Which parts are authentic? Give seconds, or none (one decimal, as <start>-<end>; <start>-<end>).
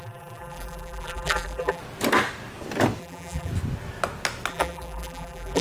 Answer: 1.8-3.0; 3.5-4.5